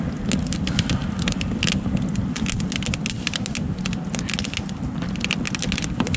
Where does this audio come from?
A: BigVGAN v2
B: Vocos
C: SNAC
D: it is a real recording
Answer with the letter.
D